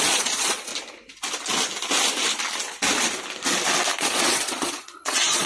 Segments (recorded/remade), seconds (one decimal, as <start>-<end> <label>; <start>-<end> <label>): 0.0-0.7 remade; 0.7-4.0 recorded; 4.0-5.5 remade